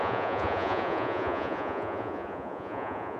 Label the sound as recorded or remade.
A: remade